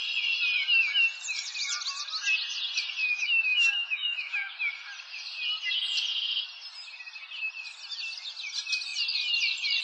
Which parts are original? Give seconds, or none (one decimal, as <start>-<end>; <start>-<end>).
0.0-3.0; 4.7-9.8

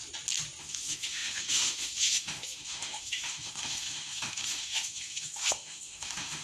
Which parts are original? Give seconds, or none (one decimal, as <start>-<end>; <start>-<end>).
0.0-0.6

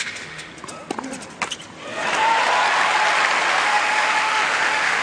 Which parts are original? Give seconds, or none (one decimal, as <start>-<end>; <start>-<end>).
0.5-3.5

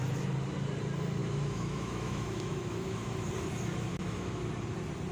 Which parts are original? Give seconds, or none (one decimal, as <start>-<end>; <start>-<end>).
0.0-1.2; 3.3-3.9; 4.5-5.1

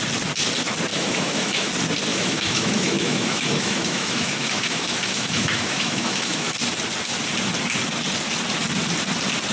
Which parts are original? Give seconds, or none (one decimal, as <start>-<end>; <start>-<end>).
0.0-0.9; 1.7-2.1; 6.5-9.5

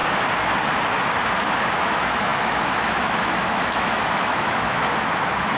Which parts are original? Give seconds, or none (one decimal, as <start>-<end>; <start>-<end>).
0.0-1.7

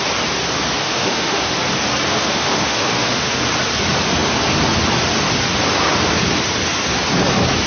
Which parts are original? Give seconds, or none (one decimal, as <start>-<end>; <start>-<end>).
0.0-0.8; 1.4-2.1; 3.4-7.7

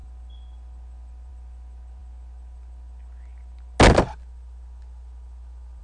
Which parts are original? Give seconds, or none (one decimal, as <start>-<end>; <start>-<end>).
0.0-5.8